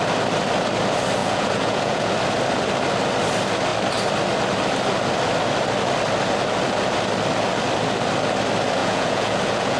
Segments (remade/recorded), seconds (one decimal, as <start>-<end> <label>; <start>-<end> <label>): 0.0-1.2 recorded; 1.2-2.1 remade; 2.1-8.8 recorded; 8.8-9.8 remade